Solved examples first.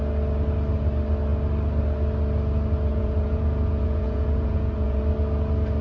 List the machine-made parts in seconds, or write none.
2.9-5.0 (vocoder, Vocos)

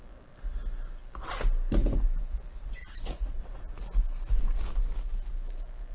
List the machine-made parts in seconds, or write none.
2.8-3.4 (vocoder, Vocos)

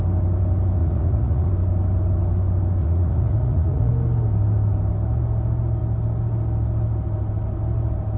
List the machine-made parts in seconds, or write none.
0.8-1.5 (vocoder, Vocos); 2.8-3.9